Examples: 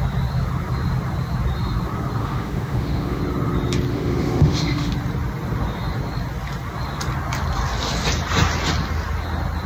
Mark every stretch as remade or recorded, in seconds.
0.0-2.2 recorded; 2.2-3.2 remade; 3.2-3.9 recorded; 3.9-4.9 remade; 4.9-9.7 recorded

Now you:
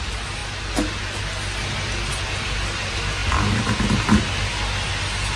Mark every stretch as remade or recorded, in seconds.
0.0-5.4 recorded

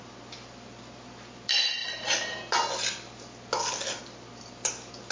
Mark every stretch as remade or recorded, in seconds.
0.0-5.1 recorded

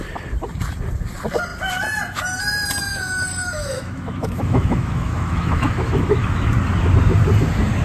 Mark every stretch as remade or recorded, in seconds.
0.0-2.9 recorded; 2.9-6.5 remade; 6.5-7.8 recorded

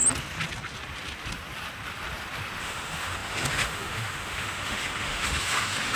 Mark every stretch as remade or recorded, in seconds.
0.0-2.6 recorded; 2.6-6.0 remade

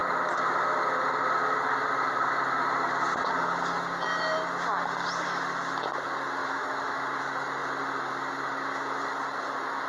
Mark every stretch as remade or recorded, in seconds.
0.0-6.4 recorded; 6.4-7.0 remade; 7.0-9.9 recorded